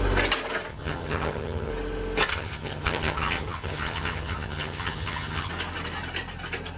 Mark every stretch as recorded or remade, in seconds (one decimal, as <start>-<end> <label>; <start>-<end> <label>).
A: 0.0-0.7 recorded; 0.7-1.7 remade; 1.7-2.3 recorded; 2.3-5.5 remade; 5.5-6.8 recorded